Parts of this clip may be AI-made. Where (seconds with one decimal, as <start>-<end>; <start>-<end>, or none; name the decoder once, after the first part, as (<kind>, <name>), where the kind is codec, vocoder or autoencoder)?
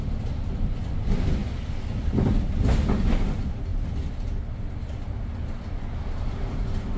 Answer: none